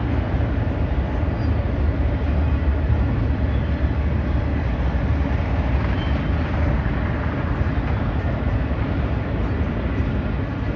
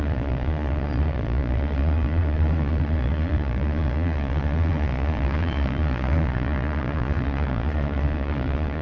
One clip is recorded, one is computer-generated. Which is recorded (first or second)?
first